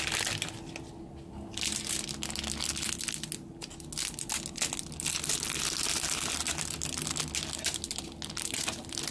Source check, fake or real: real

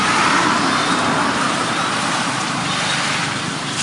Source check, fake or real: fake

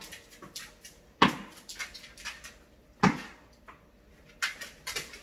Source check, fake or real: real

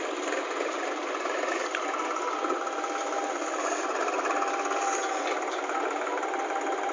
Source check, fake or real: real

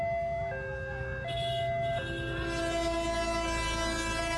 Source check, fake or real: real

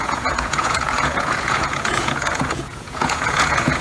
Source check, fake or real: fake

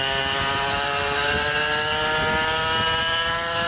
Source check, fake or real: real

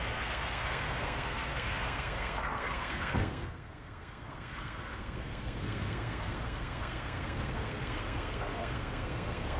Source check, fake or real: fake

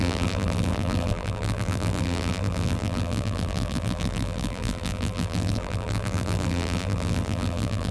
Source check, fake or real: fake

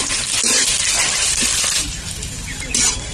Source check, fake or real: real